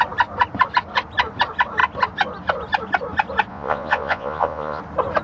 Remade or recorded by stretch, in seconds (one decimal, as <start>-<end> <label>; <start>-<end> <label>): 0.0-3.5 recorded; 3.5-4.8 remade; 4.8-5.2 recorded